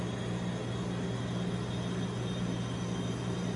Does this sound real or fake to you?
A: real